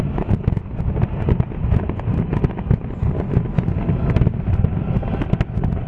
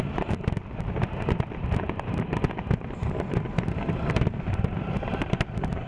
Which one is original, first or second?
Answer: first